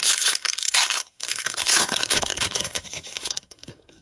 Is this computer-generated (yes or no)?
yes